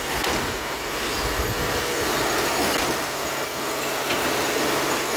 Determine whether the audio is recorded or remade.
recorded